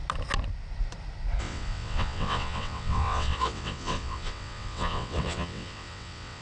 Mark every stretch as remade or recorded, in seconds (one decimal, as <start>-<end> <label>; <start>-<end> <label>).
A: 0.0-1.4 recorded; 1.4-6.4 remade